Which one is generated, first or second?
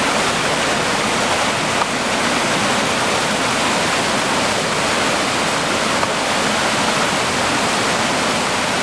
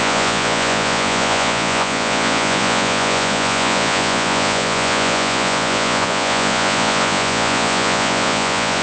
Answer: second